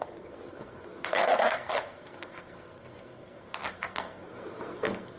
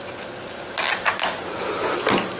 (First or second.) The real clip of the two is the second